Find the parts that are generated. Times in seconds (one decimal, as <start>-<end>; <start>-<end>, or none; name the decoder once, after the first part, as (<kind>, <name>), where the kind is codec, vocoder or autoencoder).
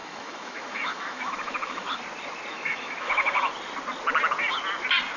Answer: 0.0-2.0 (autoencoder, DAC-VAE); 2.5-3.5